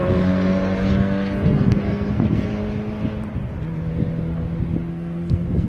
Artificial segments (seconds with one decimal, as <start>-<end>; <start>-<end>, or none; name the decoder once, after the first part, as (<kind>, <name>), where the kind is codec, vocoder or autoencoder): 0.0-2.5 (codec, SNAC); 4.9-5.7